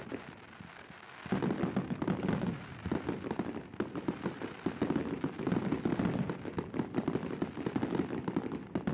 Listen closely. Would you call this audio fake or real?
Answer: real